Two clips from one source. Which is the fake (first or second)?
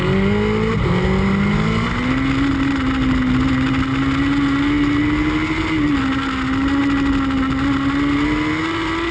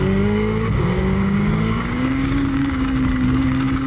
second